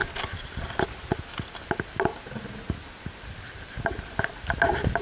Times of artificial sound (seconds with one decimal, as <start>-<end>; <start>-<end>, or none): 0.0-1.0; 2.1-4.1